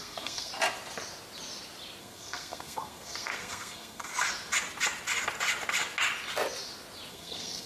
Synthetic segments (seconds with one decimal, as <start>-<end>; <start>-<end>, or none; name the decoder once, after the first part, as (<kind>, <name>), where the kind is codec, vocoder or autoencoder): 0.0-0.5 (codec, SNAC); 2.0-4.1; 7.1-7.7